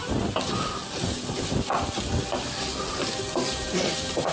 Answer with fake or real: real